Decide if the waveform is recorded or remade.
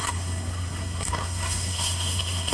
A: remade